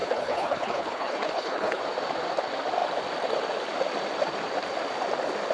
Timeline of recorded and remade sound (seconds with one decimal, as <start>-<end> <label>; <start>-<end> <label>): 0.0-1.8 remade; 1.8-5.5 recorded